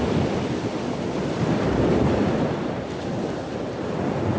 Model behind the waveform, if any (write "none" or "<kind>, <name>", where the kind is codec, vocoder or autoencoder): none